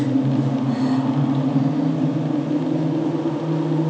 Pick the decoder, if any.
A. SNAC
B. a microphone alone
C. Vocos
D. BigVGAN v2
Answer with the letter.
B